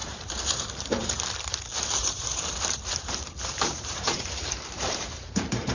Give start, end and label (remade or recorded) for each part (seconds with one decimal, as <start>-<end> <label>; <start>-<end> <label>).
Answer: 0.0-1.5 remade; 1.5-2.0 recorded; 2.0-5.7 remade